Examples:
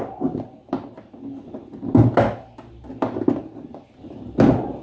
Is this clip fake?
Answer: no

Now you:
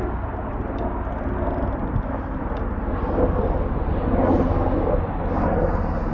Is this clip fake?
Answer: no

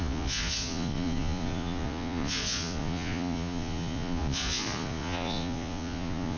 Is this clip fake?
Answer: yes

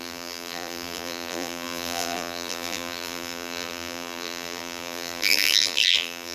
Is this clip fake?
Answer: yes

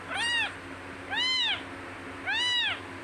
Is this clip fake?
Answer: no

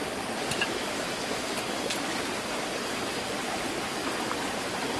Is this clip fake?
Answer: no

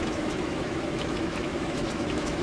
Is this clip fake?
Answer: yes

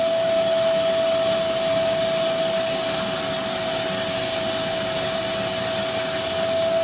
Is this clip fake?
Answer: no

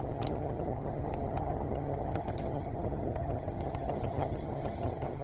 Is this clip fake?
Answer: yes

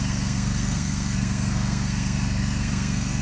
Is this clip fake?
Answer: yes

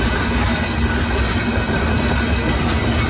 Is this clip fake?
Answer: no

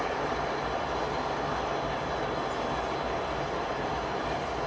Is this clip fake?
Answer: no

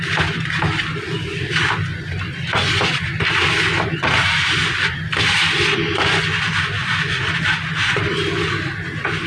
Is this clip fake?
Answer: no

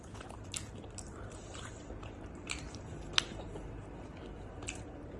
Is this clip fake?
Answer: yes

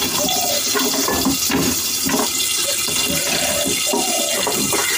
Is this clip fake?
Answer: no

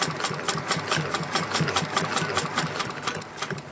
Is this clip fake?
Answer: no